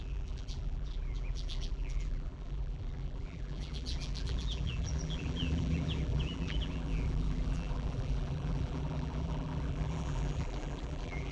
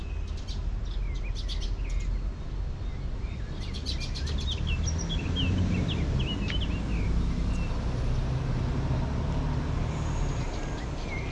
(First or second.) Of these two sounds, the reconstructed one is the first